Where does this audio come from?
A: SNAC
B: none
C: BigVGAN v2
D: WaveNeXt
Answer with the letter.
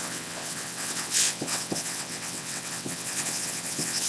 D